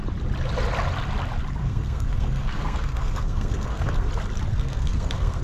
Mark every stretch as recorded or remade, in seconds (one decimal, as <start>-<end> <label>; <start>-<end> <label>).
0.0-1.6 recorded; 1.6-4.1 remade; 4.1-4.5 recorded; 4.5-5.4 remade